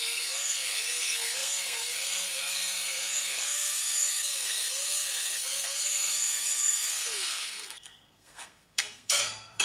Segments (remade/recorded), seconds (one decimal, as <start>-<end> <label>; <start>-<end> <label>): 0.0-9.6 remade

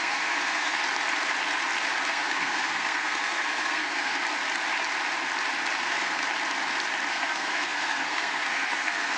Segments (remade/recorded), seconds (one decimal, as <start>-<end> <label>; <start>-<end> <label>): 0.0-0.8 remade; 0.8-2.1 recorded; 2.1-4.1 remade; 4.1-5.8 recorded; 5.8-6.2 remade; 6.2-7.1 recorded; 7.1-9.2 remade

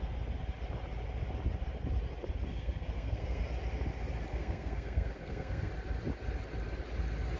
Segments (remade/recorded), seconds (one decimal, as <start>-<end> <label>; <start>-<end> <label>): 0.0-2.5 recorded; 2.5-3.4 remade; 3.4-4.3 recorded; 4.3-5.7 remade; 5.7-7.4 recorded

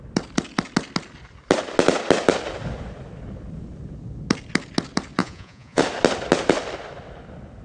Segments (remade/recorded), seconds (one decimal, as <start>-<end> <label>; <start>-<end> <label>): 0.0-5.2 recorded; 5.2-5.8 remade; 5.8-7.6 recorded

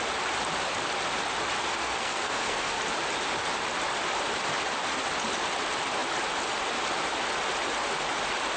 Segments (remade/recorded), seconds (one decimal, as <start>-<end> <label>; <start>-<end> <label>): 0.0-1.8 recorded; 1.8-2.8 remade; 2.8-8.6 recorded